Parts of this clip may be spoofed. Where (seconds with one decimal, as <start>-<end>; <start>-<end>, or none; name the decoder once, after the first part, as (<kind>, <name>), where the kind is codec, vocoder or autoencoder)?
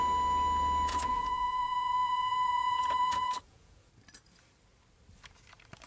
0.9-3.9 (vocoder, Vocos)